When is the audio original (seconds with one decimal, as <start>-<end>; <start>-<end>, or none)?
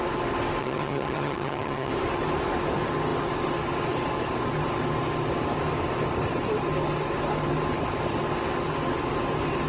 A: 0.0-0.6; 1.9-9.7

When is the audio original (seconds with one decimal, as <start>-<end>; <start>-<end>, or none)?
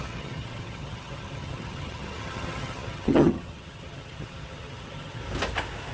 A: 5.2-5.9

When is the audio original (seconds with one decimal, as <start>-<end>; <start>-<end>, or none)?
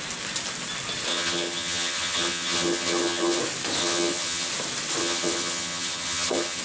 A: 0.0-1.1; 3.4-3.8; 4.5-5.0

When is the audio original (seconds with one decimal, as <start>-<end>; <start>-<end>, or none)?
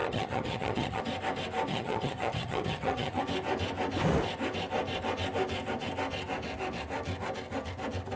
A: 1.0-1.7; 3.2-8.2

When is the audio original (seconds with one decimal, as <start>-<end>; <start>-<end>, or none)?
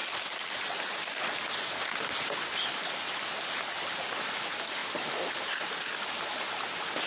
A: 0.0-7.1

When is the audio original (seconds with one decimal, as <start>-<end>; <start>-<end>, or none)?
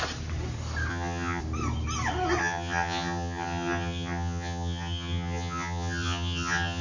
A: 0.0-0.9; 1.4-2.4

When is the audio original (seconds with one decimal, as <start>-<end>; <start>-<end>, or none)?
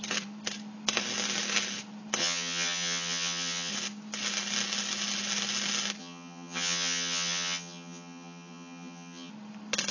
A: 0.0-2.2; 3.7-6.0; 9.3-9.9